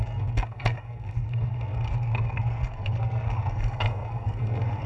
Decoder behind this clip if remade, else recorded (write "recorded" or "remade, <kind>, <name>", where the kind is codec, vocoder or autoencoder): remade, codec, SNAC